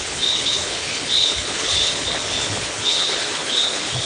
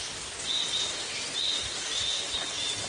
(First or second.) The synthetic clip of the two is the first